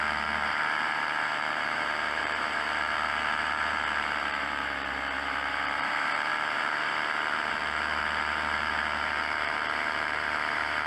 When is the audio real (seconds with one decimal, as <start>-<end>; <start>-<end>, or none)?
none